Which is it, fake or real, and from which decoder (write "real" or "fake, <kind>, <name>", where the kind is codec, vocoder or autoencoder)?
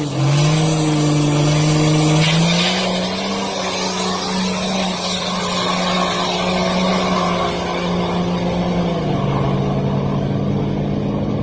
real